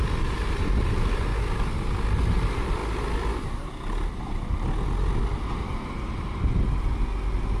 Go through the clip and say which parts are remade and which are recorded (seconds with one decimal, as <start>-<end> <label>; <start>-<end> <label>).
0.0-1.3 remade; 1.3-2.2 recorded; 2.2-2.8 remade; 2.8-7.6 recorded